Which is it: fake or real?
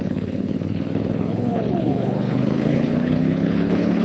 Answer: fake